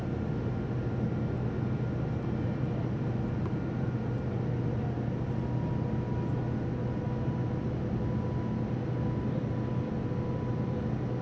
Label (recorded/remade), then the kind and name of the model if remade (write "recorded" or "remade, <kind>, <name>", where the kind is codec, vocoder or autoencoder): recorded